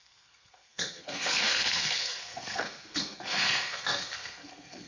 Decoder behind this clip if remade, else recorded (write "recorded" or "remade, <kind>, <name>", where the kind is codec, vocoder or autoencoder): remade, codec, SNAC